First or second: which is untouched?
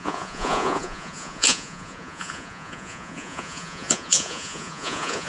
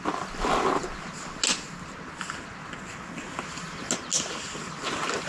second